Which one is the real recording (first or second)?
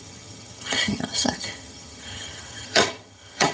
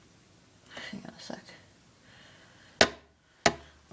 second